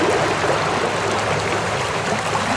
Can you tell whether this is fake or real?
real